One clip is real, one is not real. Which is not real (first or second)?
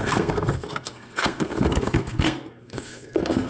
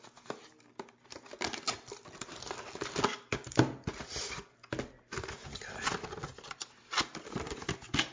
first